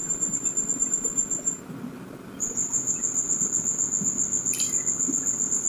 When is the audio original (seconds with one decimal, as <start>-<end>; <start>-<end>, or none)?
3.4-5.7